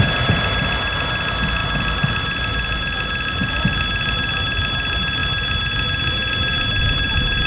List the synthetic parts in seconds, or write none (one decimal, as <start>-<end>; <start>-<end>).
none